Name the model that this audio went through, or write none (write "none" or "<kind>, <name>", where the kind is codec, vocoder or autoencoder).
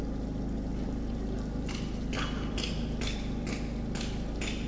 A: none